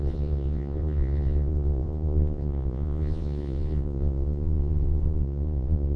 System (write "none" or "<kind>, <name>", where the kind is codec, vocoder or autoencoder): vocoder, Vocos